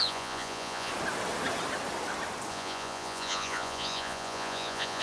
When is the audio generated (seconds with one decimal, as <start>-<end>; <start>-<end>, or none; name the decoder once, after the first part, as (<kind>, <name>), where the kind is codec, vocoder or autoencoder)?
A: 0.0-0.9 (vocoder, Vocos); 2.5-5.0